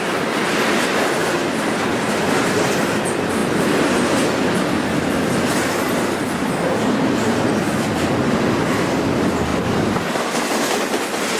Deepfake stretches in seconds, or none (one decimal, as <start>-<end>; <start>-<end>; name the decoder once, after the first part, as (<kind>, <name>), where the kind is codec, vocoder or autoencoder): none